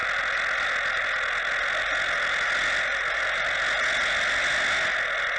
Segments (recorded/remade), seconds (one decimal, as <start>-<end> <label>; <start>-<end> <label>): 0.0-5.4 recorded